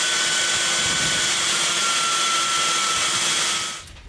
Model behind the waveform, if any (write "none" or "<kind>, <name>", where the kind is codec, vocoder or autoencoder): none